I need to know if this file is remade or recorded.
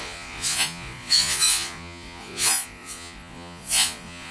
remade